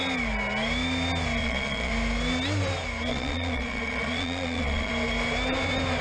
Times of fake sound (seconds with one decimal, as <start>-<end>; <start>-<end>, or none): 1.4-1.9; 3.1-4.9